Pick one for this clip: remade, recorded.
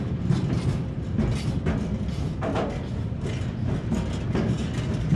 recorded